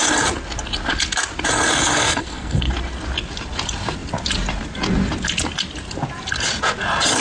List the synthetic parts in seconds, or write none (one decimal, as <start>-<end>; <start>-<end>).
1.9-2.7